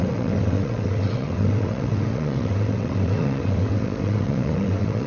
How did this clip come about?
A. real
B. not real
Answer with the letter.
B